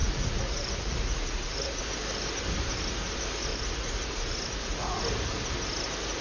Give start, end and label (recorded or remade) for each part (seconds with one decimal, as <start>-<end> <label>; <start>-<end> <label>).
0.0-1.8 remade; 1.8-3.5 recorded; 3.5-5.0 remade; 5.0-6.2 recorded